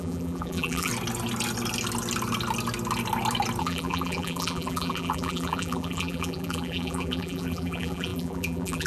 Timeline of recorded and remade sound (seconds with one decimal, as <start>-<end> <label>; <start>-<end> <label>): 0.0-0.9 remade; 0.9-3.6 recorded; 3.6-8.9 remade

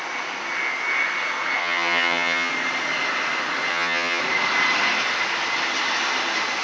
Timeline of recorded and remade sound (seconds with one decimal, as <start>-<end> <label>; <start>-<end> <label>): 0.0-1.6 recorded; 1.6-2.5 remade; 2.5-3.7 recorded; 3.7-4.2 remade; 4.2-6.6 recorded